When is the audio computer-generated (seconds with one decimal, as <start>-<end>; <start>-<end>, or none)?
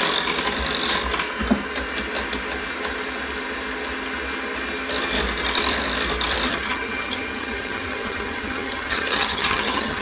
6.5-10.0